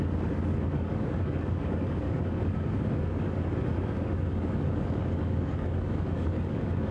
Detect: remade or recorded remade